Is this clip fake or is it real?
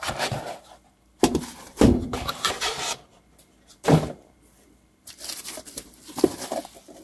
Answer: fake